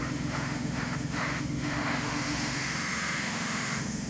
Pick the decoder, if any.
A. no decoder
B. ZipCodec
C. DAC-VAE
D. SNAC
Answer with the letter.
C